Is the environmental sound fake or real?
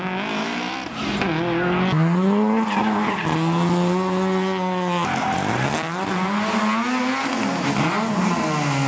real